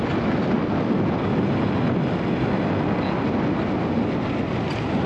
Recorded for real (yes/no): yes